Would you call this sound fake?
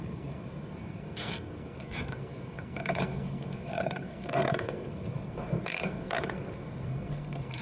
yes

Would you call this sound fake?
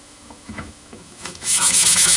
yes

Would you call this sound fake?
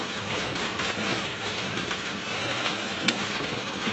yes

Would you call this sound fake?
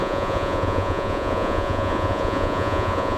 yes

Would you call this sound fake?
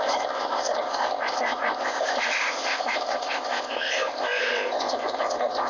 yes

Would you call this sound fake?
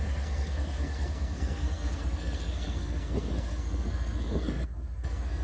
yes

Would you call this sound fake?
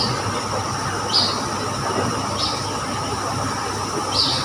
no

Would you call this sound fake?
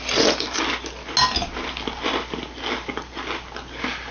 no